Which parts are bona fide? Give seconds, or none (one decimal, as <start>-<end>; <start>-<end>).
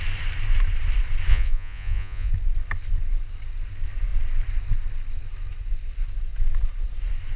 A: 0.0-1.3; 2.3-7.4